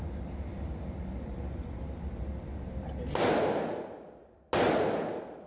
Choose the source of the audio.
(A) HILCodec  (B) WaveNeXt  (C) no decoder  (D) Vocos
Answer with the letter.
C